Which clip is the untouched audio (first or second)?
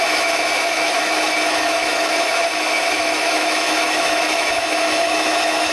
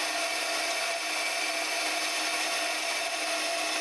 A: second